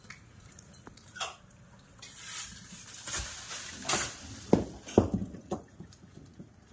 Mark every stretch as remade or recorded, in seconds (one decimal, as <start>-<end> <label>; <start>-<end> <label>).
0.0-1.3 remade; 1.3-5.3 recorded; 5.3-6.7 remade

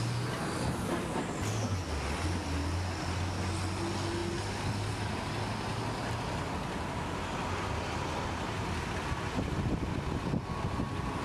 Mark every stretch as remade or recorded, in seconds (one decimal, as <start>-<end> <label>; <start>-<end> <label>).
0.0-11.2 recorded

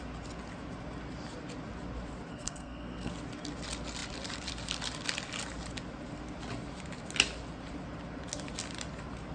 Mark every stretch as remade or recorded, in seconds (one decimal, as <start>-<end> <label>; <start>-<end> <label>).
0.0-2.3 recorded; 2.3-3.1 remade; 3.1-9.3 recorded

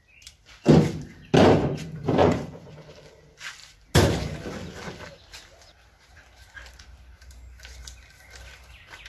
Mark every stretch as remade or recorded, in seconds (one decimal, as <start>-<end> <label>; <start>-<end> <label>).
0.0-2.2 recorded; 2.2-2.7 remade; 2.7-9.1 recorded